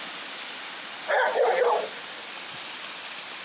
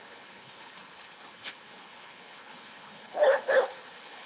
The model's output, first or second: second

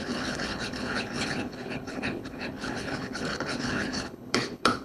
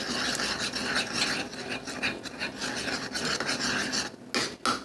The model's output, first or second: first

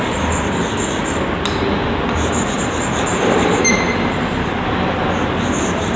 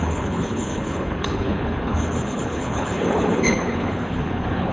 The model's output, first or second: second